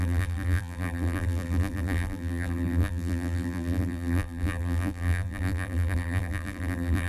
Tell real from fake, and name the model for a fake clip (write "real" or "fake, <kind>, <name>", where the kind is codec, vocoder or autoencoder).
fake, vocoder, BigVGAN v2